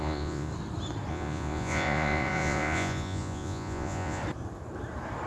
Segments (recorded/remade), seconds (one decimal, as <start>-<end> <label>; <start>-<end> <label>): 0.0-0.5 remade; 0.5-1.1 recorded; 1.1-4.2 remade; 4.2-5.3 recorded